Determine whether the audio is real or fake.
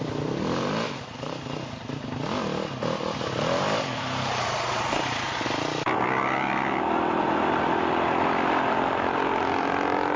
real